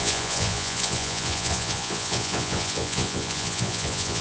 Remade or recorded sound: remade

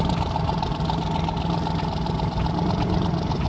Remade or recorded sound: recorded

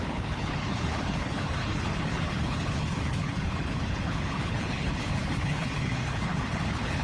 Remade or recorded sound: remade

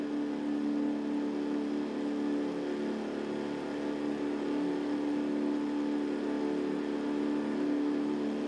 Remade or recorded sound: recorded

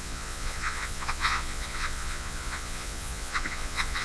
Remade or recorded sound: remade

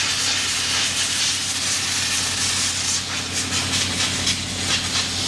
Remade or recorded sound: recorded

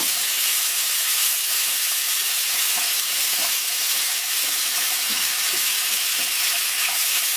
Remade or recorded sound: remade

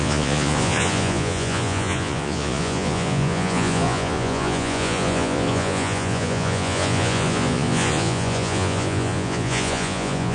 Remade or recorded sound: remade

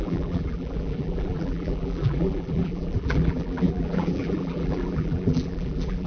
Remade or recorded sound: remade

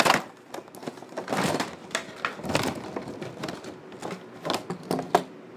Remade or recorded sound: recorded